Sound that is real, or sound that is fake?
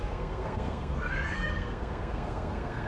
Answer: fake